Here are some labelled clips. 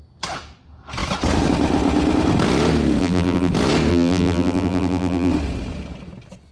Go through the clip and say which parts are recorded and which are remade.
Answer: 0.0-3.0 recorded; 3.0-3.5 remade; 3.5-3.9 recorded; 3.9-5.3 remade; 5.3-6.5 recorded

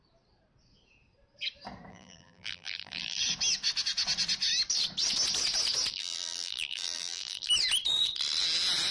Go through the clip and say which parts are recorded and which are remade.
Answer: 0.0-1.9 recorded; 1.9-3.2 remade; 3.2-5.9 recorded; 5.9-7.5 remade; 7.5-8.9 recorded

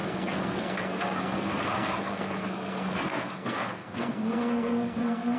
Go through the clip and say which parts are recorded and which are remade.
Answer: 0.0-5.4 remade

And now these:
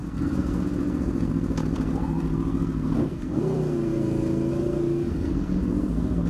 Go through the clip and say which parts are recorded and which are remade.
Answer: 0.0-6.3 remade